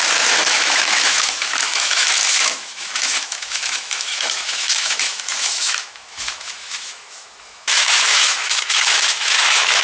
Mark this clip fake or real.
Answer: fake